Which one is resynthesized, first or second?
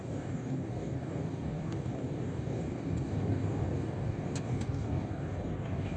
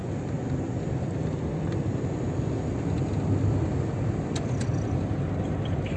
first